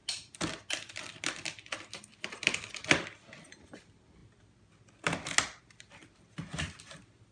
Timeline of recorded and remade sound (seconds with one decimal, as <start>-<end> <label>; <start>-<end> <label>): 0.0-7.3 recorded